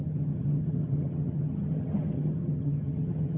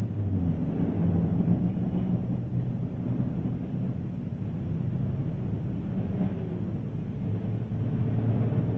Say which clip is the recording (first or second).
second